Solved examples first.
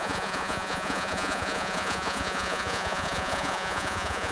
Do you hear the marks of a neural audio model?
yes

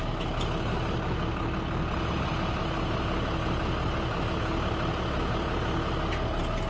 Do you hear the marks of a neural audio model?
no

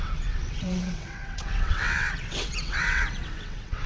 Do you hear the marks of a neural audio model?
yes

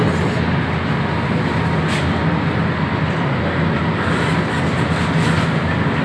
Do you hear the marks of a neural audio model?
no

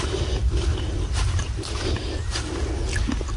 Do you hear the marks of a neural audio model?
no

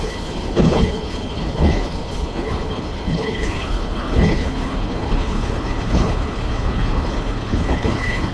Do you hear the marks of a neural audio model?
yes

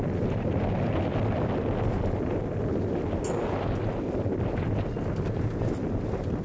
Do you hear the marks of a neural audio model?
no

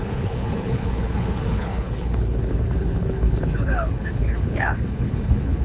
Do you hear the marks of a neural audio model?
yes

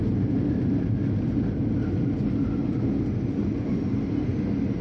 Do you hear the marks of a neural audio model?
no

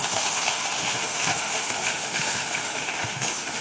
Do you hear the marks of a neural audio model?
yes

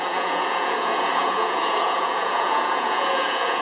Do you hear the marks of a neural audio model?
yes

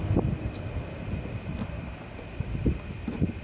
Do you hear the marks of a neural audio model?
no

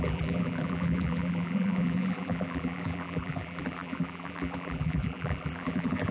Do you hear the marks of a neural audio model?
yes